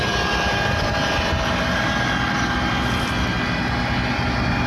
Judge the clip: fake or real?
real